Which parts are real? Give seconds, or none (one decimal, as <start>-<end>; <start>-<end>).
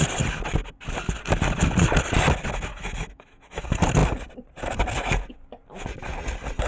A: 0.0-2.7; 3.6-6.7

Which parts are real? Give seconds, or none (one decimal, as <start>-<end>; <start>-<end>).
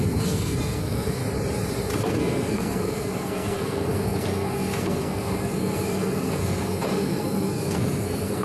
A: 1.2-2.1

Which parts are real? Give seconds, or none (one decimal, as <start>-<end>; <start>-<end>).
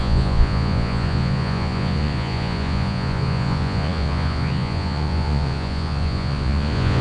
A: none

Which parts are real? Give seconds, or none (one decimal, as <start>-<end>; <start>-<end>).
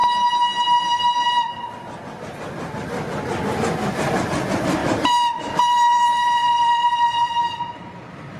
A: 0.0-4.8; 7.5-8.4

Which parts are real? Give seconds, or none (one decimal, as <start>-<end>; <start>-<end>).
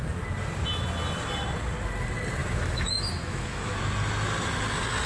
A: 0.0-2.4; 3.8-5.1